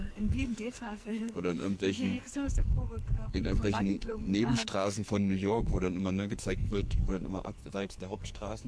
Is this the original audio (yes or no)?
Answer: no